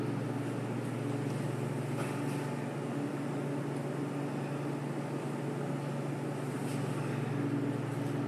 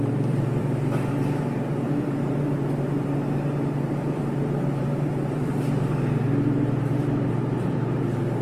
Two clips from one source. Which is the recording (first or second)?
first